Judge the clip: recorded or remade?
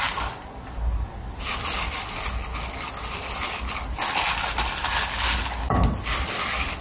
recorded